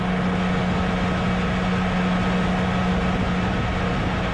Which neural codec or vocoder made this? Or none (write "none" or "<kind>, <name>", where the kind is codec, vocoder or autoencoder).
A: none